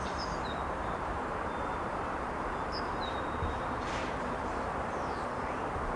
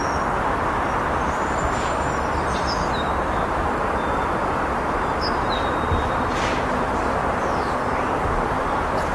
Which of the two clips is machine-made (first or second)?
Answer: first